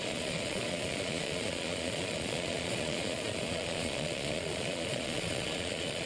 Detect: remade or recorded remade